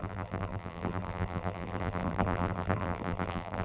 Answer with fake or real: fake